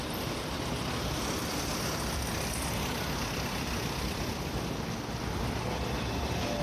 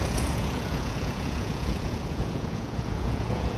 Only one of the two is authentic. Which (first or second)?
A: first